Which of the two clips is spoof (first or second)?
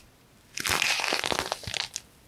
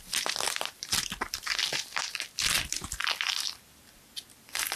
second